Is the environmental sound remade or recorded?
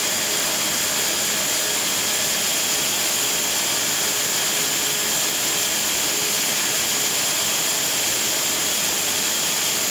recorded